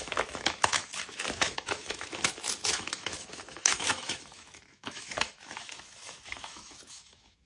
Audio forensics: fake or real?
fake